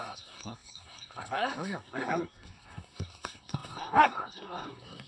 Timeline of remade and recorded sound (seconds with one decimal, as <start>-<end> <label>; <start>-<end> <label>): 0.0-5.1 remade